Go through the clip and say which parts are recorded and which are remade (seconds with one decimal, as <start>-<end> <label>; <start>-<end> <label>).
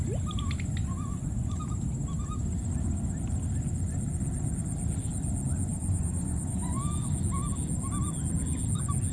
0.0-0.8 recorded; 0.8-1.6 remade; 1.6-5.7 recorded; 5.7-6.8 remade; 6.8-9.1 recorded